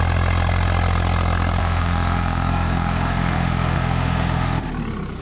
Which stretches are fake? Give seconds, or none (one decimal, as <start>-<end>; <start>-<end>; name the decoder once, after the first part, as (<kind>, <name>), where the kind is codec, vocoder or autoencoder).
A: 1.6-4.7 (autoencoder, DAC-VAE)